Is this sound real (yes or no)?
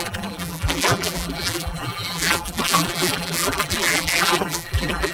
no